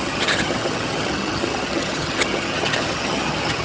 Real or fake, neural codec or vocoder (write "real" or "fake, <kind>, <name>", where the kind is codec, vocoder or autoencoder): fake, vocoder, HiFi-GAN